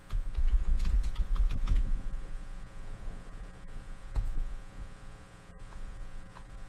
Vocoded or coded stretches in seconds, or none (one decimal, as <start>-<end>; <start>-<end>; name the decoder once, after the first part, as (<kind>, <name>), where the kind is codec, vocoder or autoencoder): 0.0-6.7 (vocoder, Vocos)